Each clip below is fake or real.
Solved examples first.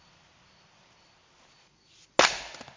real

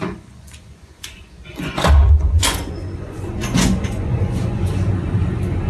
fake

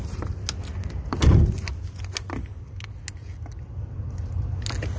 real